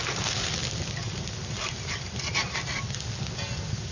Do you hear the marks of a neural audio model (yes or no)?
no